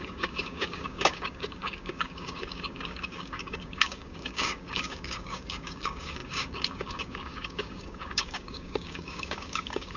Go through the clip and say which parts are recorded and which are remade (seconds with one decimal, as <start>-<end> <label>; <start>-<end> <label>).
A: 0.0-10.0 remade